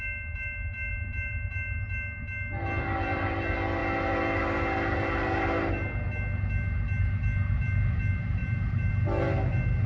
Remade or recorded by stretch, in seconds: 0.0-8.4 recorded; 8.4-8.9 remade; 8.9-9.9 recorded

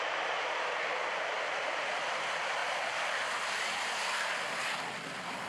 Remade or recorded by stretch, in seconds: 0.0-2.6 remade; 2.6-4.2 recorded; 4.2-5.5 remade

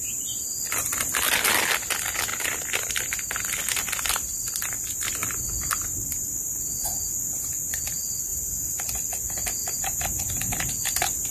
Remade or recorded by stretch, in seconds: 0.0-8.3 recorded; 8.3-8.8 remade; 8.8-9.6 recorded; 9.6-10.7 remade; 10.7-11.3 recorded

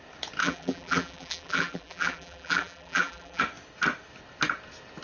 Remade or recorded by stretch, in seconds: 0.0-0.4 recorded; 0.4-3.4 remade; 3.4-5.0 recorded

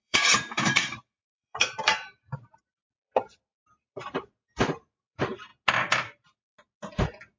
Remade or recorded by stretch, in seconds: 0.0-5.5 remade; 5.5-7.4 recorded